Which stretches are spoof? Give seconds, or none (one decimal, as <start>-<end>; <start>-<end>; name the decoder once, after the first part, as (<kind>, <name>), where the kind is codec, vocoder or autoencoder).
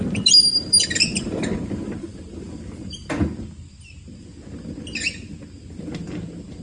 none